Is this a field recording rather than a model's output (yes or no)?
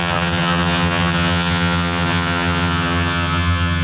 no